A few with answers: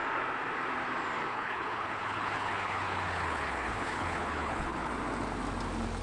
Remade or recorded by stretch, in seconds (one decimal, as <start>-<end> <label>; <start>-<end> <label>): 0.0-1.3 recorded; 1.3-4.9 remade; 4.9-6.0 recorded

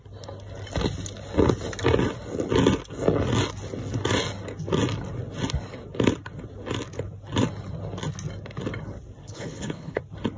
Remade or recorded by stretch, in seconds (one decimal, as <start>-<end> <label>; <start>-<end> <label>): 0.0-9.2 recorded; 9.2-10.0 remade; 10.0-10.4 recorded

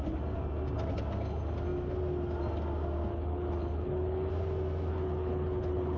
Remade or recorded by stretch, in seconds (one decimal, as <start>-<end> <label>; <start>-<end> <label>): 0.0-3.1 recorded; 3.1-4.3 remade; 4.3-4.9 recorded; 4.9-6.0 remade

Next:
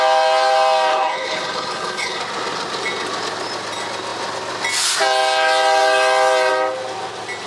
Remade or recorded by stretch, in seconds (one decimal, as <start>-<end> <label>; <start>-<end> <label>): 0.0-0.9 recorded; 0.9-2.2 remade; 2.2-7.5 recorded

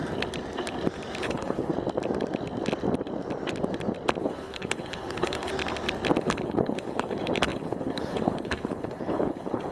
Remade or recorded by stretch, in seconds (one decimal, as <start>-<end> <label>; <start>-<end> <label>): 0.0-1.2 recorded; 1.2-1.7 remade; 1.7-4.2 recorded; 4.2-5.5 remade; 5.5-6.2 recorded; 6.2-9.7 remade

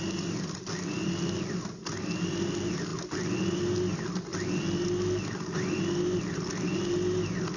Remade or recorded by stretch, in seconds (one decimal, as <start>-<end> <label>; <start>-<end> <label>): 0.0-7.6 recorded